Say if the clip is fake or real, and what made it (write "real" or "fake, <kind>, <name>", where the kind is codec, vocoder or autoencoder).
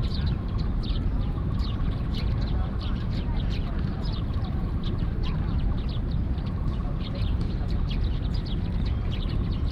fake, vocoder, BigVGAN v2